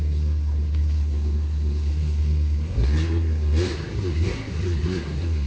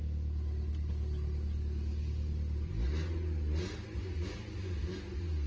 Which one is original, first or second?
second